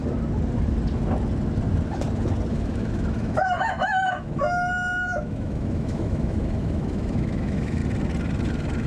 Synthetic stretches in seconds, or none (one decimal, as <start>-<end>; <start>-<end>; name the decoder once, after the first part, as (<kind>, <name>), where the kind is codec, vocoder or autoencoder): 2.5-7.8 (autoencoder, DAC-VAE)